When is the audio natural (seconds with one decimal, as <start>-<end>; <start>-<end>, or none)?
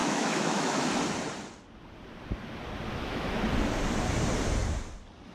0.9-2.9; 3.4-5.3